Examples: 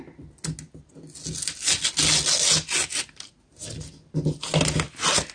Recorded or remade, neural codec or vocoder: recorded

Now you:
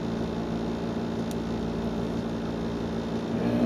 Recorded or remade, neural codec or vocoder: recorded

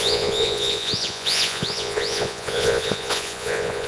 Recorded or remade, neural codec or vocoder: remade, vocoder, Vocos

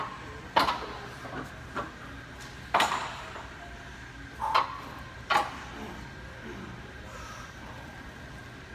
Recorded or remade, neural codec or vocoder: recorded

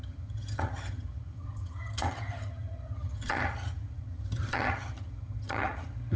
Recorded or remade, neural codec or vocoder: remade, vocoder, HiFi-GAN